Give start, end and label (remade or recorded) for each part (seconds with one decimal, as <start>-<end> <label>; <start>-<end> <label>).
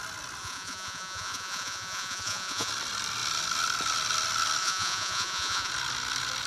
0.0-0.4 recorded; 0.4-2.7 remade; 2.7-4.6 recorded; 4.6-5.7 remade; 5.7-6.5 recorded